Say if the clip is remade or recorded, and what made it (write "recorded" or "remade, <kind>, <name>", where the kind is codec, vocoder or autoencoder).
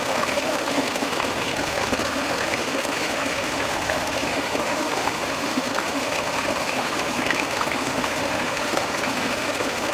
remade, autoencoder, DAC-VAE